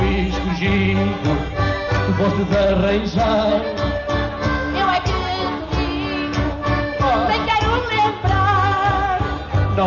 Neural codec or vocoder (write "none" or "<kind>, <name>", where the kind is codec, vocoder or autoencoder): none